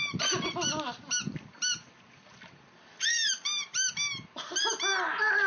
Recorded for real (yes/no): yes